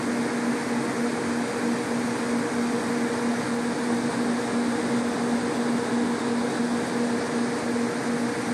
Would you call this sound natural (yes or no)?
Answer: yes